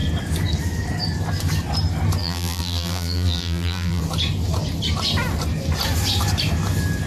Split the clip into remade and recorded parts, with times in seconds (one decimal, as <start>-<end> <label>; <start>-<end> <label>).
0.0-2.2 recorded; 2.2-4.0 remade; 4.0-7.1 recorded